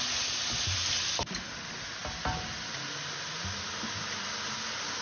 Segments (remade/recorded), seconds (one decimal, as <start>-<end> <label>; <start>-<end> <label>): 0.0-5.0 recorded